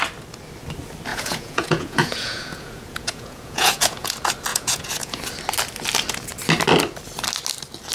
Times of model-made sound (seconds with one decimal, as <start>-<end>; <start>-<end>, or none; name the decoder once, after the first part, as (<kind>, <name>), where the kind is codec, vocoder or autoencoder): 1.1-4.1 (vocoder, Vocos); 4.5-5.2